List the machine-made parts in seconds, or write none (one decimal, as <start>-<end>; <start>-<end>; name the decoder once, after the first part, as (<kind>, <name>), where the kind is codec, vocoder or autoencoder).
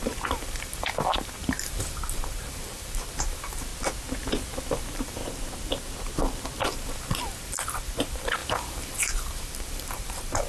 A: 0.0-3.7 (vocoder, BigVGAN v2); 4.7-5.2; 6.6-10.5